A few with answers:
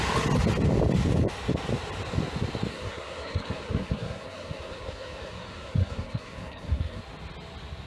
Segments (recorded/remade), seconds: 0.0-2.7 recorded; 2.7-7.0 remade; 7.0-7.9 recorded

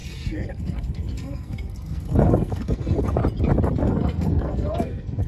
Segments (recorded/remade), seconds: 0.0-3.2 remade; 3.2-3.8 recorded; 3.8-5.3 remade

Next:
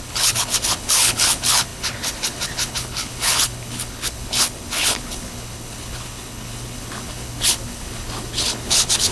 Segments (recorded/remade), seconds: 0.0-9.1 remade